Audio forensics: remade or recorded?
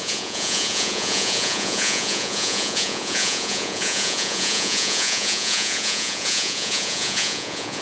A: remade